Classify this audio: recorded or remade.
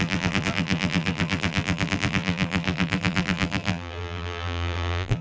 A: remade